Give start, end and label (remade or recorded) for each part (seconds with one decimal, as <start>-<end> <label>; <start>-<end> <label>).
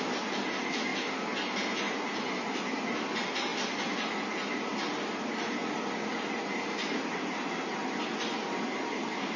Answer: 0.0-9.4 recorded